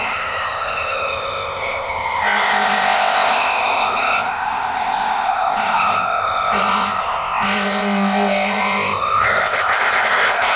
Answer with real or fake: fake